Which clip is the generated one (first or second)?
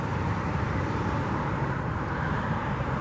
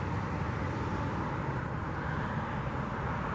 first